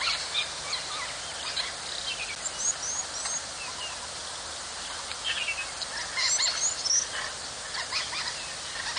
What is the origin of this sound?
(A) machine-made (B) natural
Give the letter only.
B